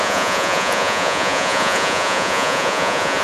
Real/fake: fake